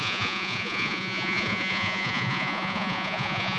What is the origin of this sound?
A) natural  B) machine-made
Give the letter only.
B